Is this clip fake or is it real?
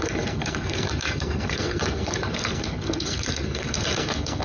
fake